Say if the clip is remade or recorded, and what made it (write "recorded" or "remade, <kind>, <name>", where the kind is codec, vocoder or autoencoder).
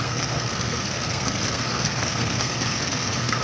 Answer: remade, codec, SNAC